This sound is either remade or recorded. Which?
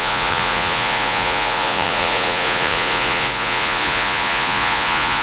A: remade